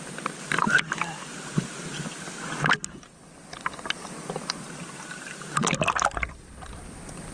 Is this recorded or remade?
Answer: recorded